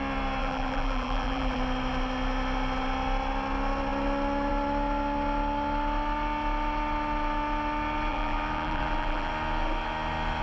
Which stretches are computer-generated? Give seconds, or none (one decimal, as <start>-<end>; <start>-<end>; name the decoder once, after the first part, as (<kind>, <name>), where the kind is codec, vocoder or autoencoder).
0.4-1.6 (vocoder, BigVGAN v2); 8.1-9.3